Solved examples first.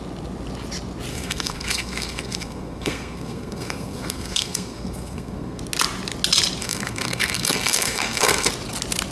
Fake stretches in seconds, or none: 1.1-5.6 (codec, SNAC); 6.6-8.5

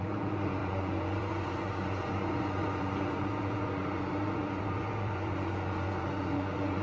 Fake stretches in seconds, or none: 0.0-6.8 (vocoder, Vocos)

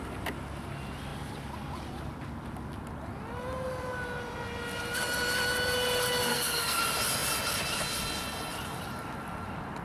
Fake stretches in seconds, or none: 6.3-6.8 (codec, SNAC)